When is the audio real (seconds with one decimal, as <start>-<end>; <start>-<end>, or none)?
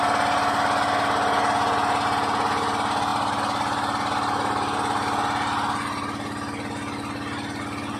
0.0-8.0